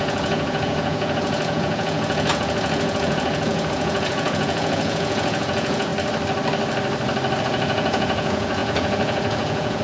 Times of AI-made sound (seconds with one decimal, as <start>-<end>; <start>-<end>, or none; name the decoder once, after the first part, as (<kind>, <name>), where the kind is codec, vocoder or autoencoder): 0.0-5.9 (vocoder, Vocos); 7.4-9.8